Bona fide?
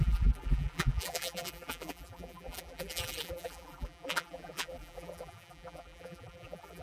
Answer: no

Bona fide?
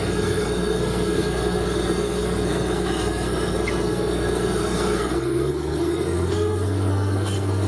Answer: no